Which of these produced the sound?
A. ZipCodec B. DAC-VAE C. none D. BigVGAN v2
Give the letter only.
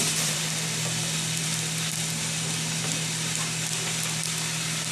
D